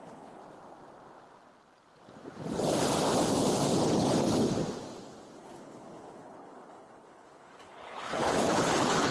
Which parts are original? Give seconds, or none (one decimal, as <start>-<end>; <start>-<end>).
0.4-5.4